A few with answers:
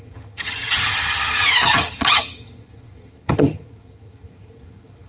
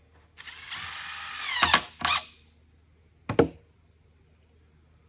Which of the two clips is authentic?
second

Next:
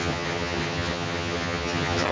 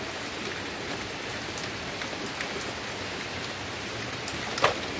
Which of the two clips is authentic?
second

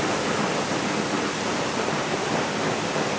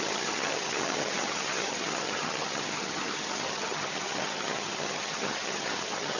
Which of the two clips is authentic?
first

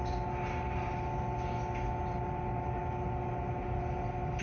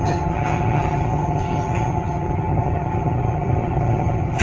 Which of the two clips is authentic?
first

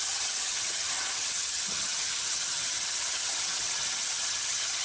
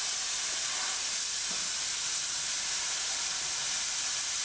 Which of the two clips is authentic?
second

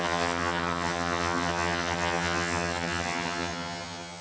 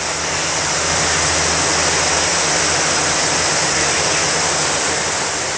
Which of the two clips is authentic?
second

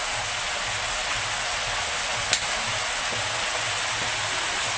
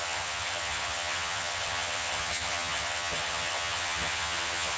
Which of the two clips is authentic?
first